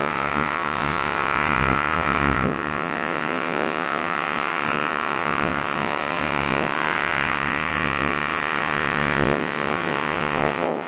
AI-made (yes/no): yes